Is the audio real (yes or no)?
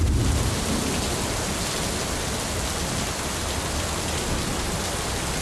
yes